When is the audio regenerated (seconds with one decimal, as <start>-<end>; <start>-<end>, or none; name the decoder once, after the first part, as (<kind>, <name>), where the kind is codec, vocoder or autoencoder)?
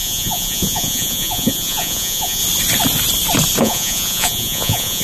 0.0-2.4 (vocoder, Vocos); 3.6-5.0